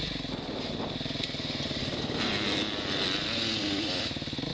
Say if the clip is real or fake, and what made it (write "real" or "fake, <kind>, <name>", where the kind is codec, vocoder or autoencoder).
real